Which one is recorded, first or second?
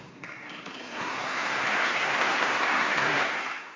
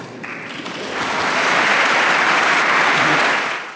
second